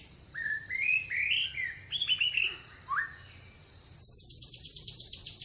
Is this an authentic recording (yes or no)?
yes